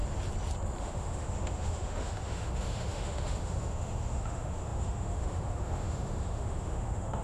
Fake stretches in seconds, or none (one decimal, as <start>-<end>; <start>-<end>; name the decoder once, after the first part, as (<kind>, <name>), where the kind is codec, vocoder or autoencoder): 0.8-7.2 (autoencoder, DAC-VAE)